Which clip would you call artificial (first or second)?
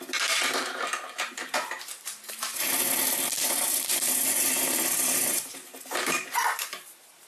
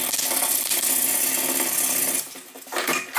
first